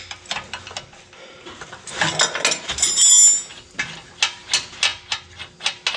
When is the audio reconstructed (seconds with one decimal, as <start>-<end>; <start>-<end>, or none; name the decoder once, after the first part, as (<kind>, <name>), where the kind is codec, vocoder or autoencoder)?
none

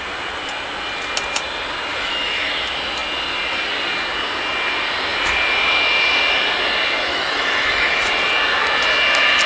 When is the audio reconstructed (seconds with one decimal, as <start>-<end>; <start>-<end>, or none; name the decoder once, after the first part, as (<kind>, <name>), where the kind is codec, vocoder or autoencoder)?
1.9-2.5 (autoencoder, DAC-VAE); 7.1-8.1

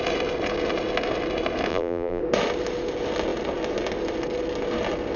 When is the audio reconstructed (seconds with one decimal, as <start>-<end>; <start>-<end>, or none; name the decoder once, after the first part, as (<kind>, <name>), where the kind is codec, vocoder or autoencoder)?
1.7-2.2 (vocoder, BigVGAN v2)

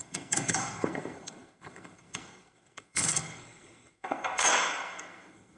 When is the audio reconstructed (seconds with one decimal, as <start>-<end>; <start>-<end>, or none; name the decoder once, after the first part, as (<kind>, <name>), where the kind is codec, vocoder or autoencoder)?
0.0-5.6 (codec, SNAC)